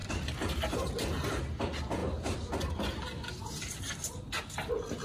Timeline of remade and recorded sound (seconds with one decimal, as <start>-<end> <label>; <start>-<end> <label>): 0.0-0.9 remade; 0.9-2.0 recorded; 2.0-3.8 remade; 3.8-5.0 recorded

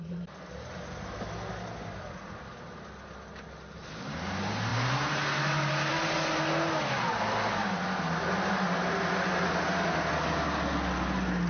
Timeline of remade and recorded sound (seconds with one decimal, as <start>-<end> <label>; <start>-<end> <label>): 0.0-11.5 recorded